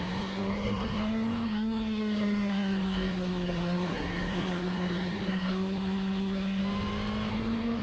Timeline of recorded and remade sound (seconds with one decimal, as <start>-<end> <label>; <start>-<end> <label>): 0.0-6.6 remade; 6.6-7.3 recorded; 7.3-7.8 remade

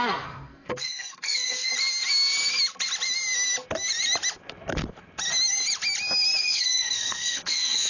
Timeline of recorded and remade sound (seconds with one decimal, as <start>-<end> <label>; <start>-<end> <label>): 0.0-1.7 remade; 1.7-6.4 recorded; 6.4-7.9 remade